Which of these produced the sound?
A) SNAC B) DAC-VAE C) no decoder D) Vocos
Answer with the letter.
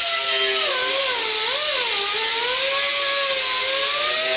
C